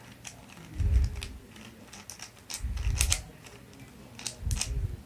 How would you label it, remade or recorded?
recorded